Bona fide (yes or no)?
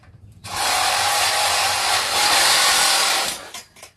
no